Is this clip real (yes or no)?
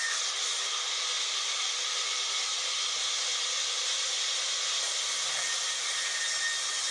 yes